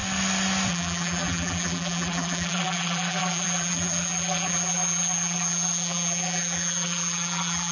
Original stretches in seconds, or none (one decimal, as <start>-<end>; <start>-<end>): 0.0-0.7